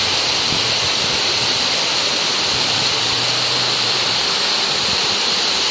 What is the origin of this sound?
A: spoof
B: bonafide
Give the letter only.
A